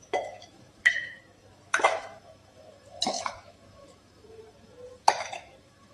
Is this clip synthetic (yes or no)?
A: yes